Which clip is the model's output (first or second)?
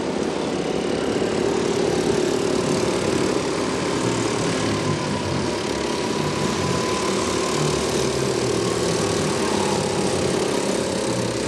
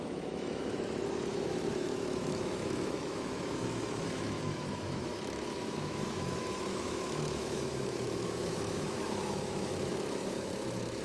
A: second